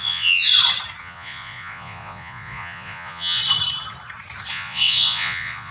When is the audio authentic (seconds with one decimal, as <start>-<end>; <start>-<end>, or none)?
0.5-1.0; 3.4-4.5